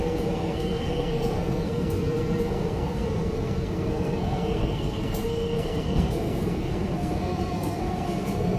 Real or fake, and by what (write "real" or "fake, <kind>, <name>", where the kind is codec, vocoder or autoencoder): fake, codec, SNAC